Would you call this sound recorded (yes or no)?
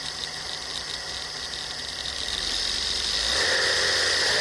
yes